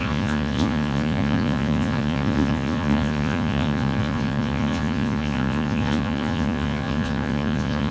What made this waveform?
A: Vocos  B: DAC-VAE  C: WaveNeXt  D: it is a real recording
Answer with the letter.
A